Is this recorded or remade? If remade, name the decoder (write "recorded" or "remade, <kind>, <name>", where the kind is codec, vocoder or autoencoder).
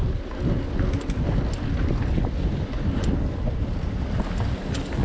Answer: recorded